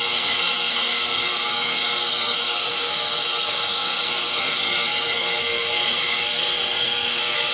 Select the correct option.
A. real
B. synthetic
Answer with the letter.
B